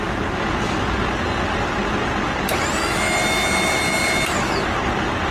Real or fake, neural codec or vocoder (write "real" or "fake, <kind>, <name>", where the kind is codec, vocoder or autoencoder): real